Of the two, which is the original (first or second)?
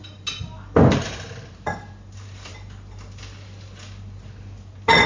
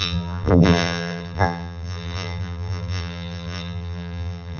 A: first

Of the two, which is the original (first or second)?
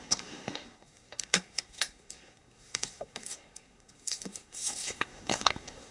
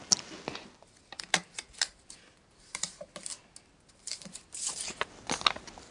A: second